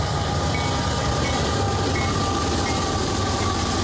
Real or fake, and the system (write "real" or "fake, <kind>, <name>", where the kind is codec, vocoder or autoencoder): real